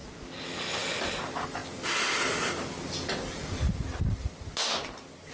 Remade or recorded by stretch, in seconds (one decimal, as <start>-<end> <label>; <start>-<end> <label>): 0.0-5.3 recorded